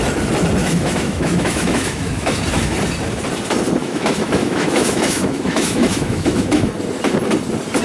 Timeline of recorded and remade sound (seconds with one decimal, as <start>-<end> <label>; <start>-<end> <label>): 0.0-0.6 recorded; 0.6-2.4 remade; 2.4-3.8 recorded; 3.8-6.7 remade; 6.7-7.8 recorded